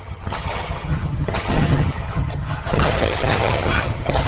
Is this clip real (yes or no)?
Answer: no